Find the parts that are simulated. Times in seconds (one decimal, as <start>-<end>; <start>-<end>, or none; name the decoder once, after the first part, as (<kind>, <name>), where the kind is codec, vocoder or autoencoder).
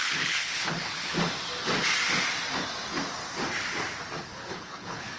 0.0-1.1 (codec, HILCodec); 4.2-5.2